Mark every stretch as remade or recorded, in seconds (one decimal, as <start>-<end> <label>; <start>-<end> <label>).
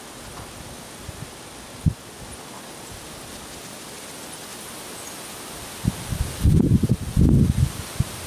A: 0.0-8.3 recorded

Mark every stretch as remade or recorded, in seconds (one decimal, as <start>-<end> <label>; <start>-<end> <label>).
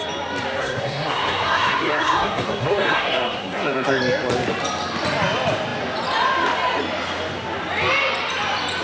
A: 0.0-0.6 recorded; 0.6-4.0 remade; 4.0-8.8 recorded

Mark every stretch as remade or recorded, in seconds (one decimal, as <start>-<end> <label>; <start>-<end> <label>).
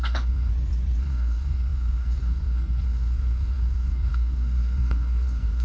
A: 0.0-0.5 remade; 0.5-1.0 recorded; 1.0-5.6 remade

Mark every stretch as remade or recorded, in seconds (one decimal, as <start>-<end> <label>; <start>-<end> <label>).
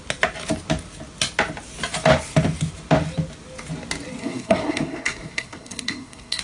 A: 0.0-4.2 recorded; 4.2-6.4 remade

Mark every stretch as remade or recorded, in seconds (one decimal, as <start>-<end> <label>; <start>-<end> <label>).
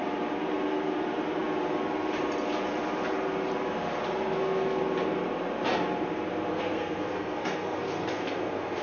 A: 0.0-6.5 recorded; 6.5-8.8 remade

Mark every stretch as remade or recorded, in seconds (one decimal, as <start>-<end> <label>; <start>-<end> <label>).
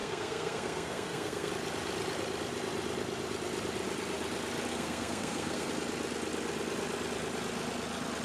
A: 0.0-1.5 remade; 1.5-4.7 recorded; 4.7-5.7 remade; 5.7-8.2 recorded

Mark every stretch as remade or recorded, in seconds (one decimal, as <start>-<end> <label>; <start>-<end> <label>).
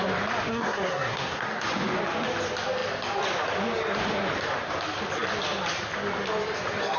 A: 0.0-0.5 recorded; 0.5-1.6 remade; 1.6-7.0 recorded